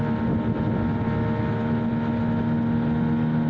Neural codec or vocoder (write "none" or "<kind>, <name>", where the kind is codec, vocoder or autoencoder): none